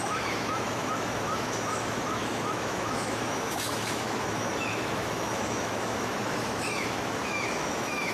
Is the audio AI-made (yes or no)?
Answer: yes